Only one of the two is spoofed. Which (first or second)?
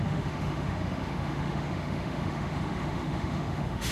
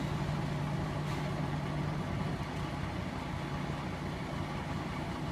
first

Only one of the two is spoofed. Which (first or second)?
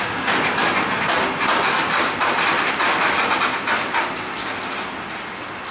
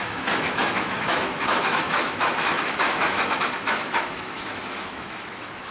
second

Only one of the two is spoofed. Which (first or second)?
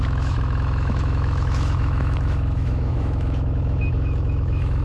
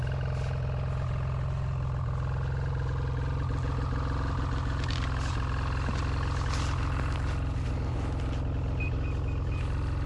first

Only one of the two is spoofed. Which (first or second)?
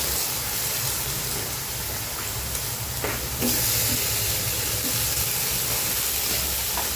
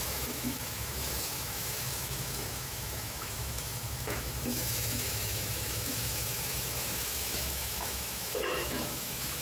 second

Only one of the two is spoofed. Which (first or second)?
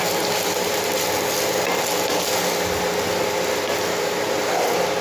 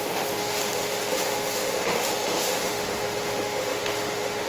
second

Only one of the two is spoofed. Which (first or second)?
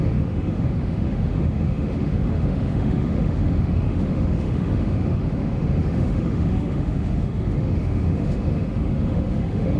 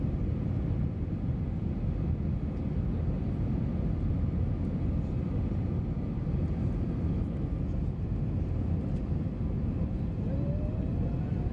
first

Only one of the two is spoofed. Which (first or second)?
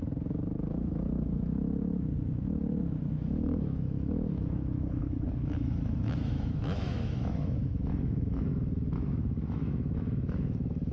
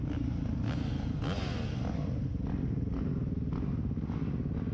first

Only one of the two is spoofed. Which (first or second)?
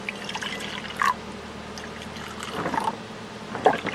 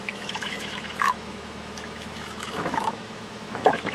second